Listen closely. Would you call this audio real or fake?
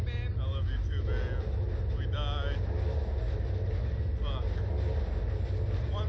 real